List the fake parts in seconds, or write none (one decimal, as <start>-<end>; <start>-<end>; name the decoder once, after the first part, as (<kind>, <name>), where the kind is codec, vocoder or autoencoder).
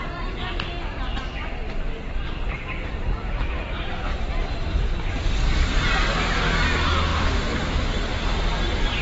7.1-7.8 (autoencoder, DAC-VAE)